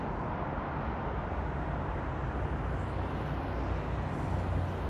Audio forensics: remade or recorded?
recorded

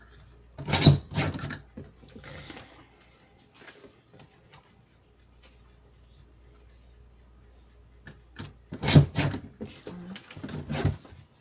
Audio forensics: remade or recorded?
recorded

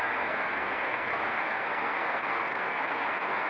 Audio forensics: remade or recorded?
remade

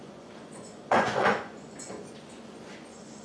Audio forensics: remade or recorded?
remade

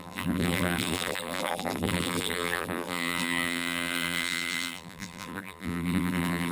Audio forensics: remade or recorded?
remade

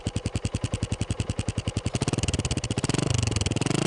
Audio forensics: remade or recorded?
recorded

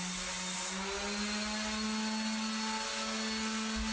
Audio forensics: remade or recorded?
recorded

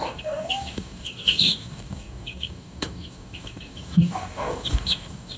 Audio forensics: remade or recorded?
remade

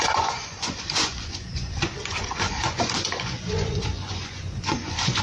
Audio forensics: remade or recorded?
remade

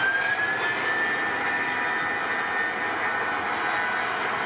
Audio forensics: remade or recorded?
recorded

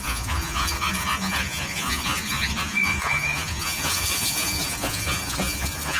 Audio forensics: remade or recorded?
remade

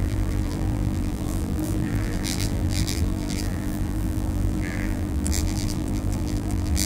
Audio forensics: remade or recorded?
remade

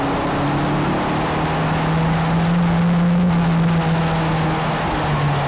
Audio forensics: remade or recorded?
recorded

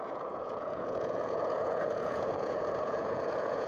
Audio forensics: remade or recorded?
remade